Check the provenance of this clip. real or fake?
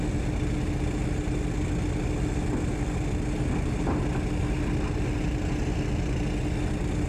real